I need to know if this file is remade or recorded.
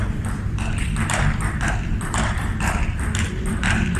remade